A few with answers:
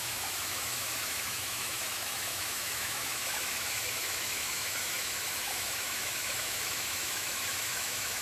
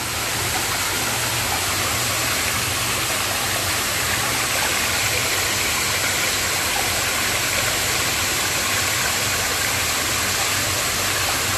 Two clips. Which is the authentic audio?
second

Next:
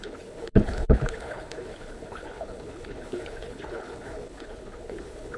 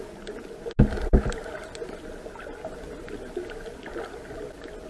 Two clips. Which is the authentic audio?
second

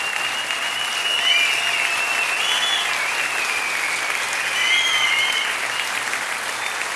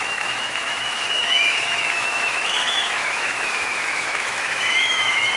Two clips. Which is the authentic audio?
first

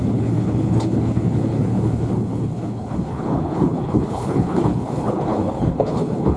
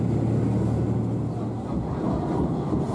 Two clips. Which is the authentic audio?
second